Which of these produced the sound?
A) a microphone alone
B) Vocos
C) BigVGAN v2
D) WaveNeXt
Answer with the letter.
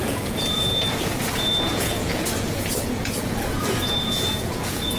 B